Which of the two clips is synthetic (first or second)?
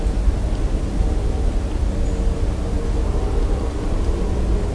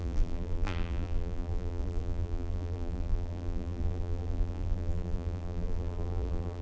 second